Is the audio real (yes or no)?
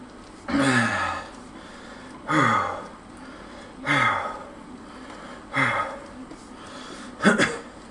yes